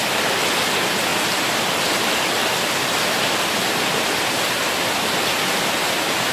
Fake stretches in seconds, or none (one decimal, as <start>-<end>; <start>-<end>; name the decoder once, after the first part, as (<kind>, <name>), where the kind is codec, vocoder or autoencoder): none